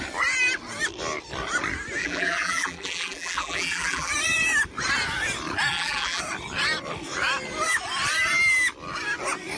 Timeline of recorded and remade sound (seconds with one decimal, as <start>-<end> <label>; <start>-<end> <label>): 0.0-2.0 recorded; 2.0-4.1 remade; 4.1-5.7 recorded; 5.7-6.2 remade; 6.2-9.6 recorded